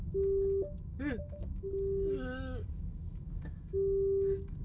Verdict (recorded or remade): remade